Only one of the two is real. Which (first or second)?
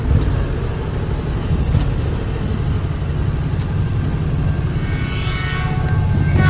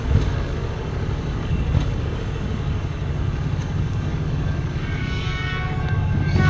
first